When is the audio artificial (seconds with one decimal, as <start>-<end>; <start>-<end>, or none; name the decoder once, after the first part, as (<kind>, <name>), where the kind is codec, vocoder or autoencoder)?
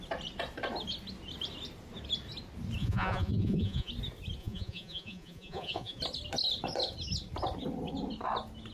2.8-3.9 (vocoder, Vocos); 4.4-6.0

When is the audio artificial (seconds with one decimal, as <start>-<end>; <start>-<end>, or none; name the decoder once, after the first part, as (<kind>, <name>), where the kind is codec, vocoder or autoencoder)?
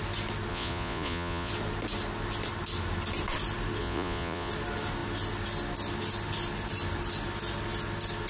0.5-1.5 (vocoder, Vocos); 3.8-4.5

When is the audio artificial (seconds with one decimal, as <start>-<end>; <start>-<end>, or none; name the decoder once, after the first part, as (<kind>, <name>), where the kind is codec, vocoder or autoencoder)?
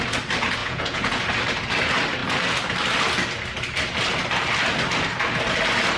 0.6-1.2 (vocoder, Vocos)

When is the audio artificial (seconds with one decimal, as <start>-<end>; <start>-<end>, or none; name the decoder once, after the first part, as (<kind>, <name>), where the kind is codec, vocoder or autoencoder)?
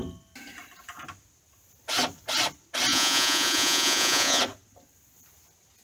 2.9-4.4 (vocoder, Vocos)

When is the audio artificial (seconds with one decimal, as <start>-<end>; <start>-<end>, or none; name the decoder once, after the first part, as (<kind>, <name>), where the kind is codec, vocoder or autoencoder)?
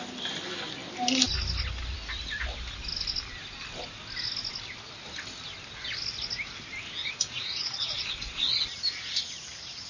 7.0-8.6 (vocoder, Vocos)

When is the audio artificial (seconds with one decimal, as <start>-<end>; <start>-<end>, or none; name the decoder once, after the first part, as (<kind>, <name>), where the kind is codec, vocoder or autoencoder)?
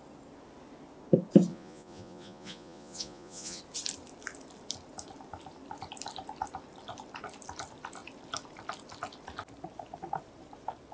1.5-3.6 (vocoder, Vocos)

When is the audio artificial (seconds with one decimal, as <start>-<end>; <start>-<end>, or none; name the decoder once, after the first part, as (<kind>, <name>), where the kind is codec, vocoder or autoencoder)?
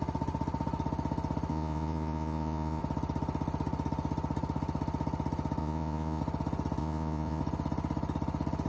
1.5-2.8 (vocoder, Vocos); 5.6-6.2; 6.8-7.4